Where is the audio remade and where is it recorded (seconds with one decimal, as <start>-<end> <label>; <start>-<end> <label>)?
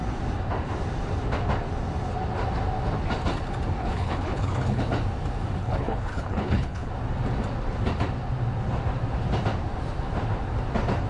0.0-3.8 recorded; 3.8-4.8 remade; 4.8-5.6 recorded; 5.6-6.9 remade; 6.9-11.1 recorded